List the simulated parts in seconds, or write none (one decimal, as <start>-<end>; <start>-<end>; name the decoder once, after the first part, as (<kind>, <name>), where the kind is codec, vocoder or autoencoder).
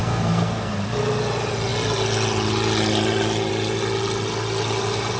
0.0-0.7 (codec, SNAC)